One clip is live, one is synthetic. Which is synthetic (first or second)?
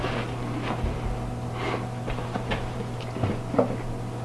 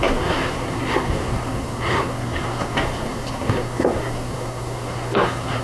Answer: second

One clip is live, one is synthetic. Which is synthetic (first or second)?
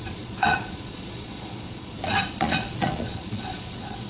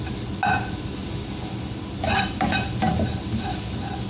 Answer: first